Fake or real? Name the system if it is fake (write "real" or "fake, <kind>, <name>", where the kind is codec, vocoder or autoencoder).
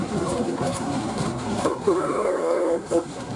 fake, codec, SNAC